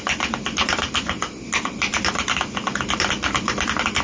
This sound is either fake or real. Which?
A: real